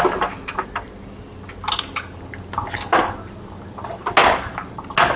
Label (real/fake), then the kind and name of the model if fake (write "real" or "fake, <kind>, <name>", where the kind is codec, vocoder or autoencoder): real